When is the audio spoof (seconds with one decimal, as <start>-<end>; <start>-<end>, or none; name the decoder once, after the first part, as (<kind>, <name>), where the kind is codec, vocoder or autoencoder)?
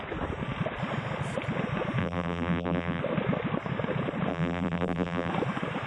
2.0-3.0 (vocoder, BigVGAN v2); 4.3-5.3